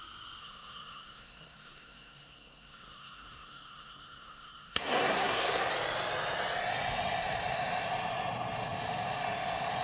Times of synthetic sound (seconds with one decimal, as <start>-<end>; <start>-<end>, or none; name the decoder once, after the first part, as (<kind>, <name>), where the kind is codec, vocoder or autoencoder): 0.4-5.7 (codec, SNAC)

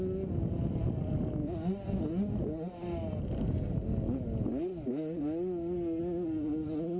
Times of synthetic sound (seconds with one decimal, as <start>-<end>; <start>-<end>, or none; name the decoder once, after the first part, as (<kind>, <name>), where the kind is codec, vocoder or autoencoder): none

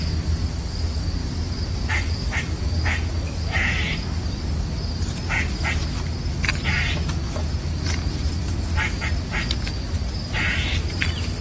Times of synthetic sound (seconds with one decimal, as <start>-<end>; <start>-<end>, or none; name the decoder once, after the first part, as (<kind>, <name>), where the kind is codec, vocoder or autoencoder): 1.2-1.9 (vocoder, BigVGAN v2)

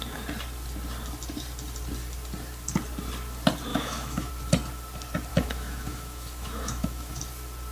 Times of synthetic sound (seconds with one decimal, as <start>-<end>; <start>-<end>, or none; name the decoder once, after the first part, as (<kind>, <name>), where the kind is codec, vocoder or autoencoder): 3.7-4.3 (autoencoder, DAC-VAE); 5.3-7.2

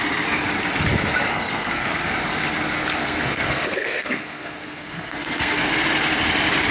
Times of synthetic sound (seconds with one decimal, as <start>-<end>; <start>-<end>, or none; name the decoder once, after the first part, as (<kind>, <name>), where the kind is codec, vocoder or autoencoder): 1.3-2.1 (codec, SNAC); 3.0-5.7

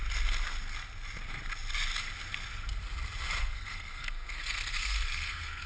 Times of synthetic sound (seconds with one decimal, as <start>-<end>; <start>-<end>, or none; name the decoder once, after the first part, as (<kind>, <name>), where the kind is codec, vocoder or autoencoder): 3.4-5.7 (codec, SNAC)